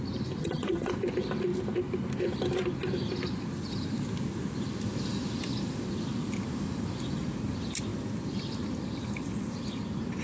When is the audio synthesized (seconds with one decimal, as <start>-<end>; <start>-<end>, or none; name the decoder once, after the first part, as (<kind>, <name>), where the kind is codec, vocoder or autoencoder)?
0.4-0.9 (vocoder, HiFi-GAN)